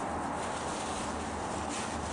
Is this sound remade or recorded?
recorded